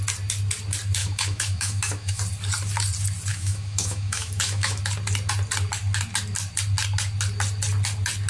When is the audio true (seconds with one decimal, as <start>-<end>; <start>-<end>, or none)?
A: 0.0-1.0; 2.2-3.3; 4.8-8.3

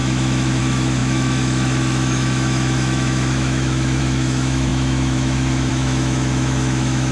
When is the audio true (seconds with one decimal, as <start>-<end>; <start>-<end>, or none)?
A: none

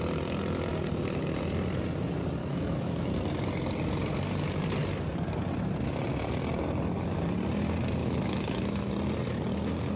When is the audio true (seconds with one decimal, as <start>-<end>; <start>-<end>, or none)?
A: 0.0-2.4; 3.1-8.0; 8.9-10.0